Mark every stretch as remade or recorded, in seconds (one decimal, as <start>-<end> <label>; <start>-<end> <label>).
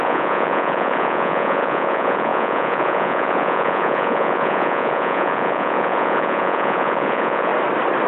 0.0-7.5 remade; 7.5-8.1 recorded